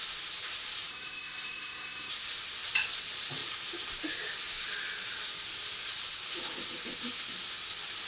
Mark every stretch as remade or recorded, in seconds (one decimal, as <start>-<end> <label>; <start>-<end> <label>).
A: 0.0-0.9 recorded; 0.9-2.1 remade; 2.1-8.1 recorded